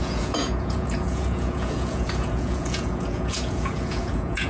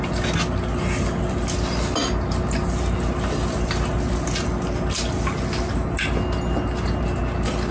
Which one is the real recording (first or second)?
second